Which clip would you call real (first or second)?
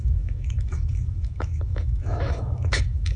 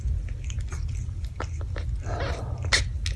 second